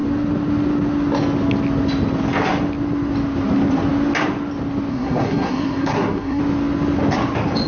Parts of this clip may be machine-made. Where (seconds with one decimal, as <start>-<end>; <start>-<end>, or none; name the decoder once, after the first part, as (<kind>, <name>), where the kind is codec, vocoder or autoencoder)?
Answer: 4.9-6.4 (codec, SNAC)